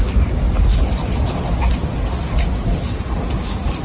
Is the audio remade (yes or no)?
no